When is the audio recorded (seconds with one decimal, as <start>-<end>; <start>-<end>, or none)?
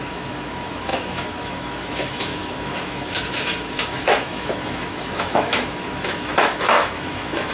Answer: none